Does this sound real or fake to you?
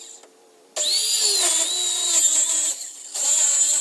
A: real